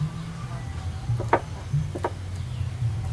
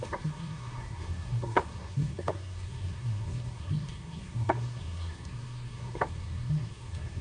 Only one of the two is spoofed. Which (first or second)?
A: second